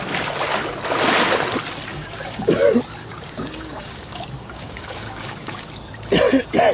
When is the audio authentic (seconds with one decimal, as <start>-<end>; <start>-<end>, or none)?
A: 0.0-1.9; 2.5-3.0; 5.7-6.7